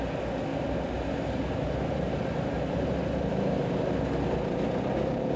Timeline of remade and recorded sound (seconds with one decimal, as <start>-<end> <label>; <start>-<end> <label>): 0.0-0.5 recorded; 0.5-3.7 remade; 3.7-5.4 recorded